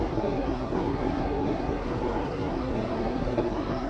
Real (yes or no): no